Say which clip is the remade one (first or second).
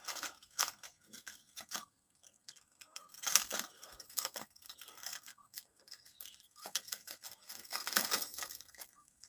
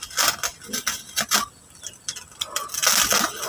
first